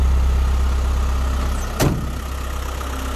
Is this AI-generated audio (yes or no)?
no